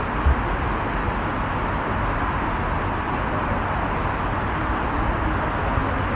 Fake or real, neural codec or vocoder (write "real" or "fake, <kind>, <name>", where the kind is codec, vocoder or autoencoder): real